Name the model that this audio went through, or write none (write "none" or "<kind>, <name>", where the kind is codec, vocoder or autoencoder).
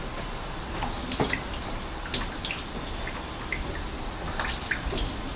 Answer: none